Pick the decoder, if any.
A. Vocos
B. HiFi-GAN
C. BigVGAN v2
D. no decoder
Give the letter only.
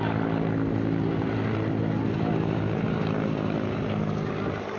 D